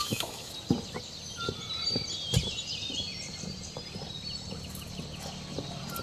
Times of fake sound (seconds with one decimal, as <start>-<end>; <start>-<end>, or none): 0.0-0.5

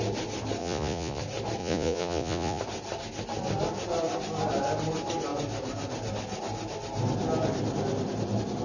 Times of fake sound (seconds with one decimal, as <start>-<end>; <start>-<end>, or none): 0.6-1.2; 1.6-2.6